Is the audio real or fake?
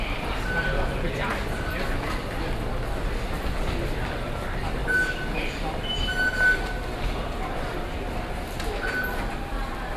real